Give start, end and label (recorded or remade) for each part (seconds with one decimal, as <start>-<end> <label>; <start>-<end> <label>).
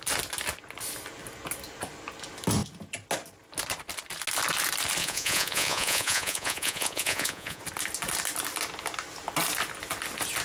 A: 0.0-5.0 recorded; 5.0-7.6 remade; 7.6-10.4 recorded